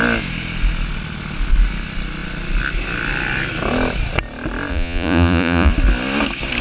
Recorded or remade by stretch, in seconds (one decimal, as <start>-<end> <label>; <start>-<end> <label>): 0.0-4.7 recorded; 4.7-5.7 remade; 5.7-6.6 recorded